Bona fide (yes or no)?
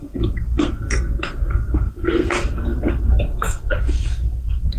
no